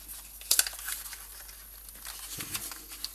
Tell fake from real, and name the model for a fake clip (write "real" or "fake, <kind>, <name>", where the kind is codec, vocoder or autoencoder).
real